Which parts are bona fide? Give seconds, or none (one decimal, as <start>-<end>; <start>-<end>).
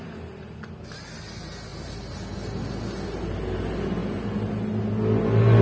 0.0-5.6